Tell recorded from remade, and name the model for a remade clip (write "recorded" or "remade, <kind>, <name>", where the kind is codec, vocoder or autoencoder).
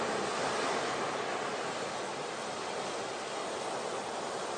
recorded